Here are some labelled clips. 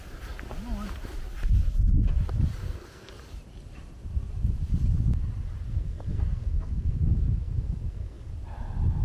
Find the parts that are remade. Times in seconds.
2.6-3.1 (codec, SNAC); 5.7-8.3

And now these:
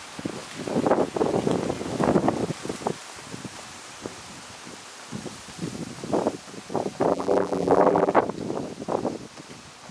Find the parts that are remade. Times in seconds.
7.1-8.1 (vocoder, BigVGAN v2)

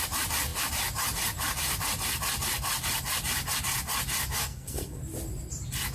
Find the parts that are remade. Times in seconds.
4.4-5.0 (codec, SNAC)

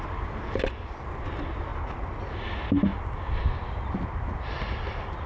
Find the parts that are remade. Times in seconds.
none

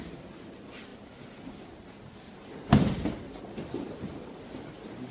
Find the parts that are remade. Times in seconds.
none

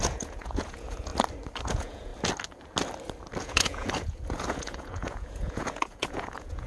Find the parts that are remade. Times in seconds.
0.0-1.1 (vocoder, Vocos); 1.6-2.1; 3.4-6.7

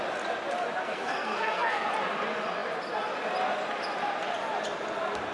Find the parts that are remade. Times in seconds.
0.8-1.9 (codec, SNAC)